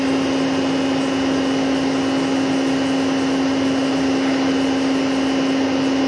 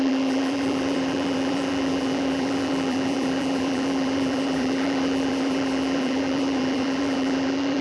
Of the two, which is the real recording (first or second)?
first